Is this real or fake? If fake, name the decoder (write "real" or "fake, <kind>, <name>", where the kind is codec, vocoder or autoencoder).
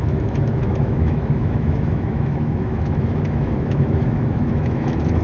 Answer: fake, autoencoder, DAC-VAE